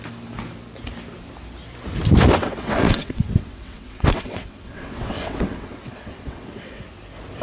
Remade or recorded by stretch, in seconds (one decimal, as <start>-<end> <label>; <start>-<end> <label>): 0.0-2.4 recorded; 2.4-6.8 remade; 6.8-7.4 recorded